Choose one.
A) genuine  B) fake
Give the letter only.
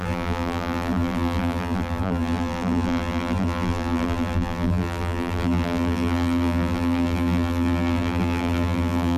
B